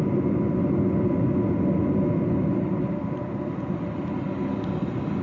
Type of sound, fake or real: real